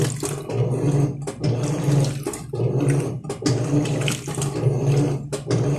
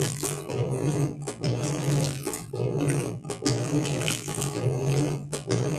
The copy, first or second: second